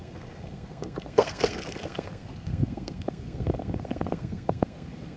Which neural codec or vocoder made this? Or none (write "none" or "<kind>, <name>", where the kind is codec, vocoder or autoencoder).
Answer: codec, SNAC